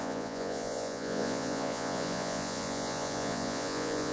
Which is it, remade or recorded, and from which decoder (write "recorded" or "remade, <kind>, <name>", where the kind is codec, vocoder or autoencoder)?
remade, vocoder, Vocos